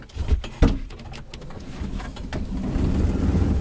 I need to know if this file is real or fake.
real